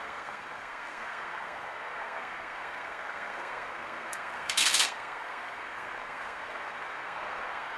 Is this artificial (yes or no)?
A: yes